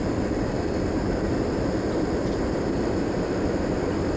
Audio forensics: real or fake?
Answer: real